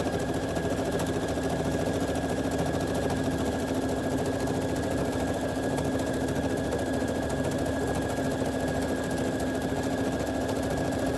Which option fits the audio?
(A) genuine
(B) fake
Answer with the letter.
A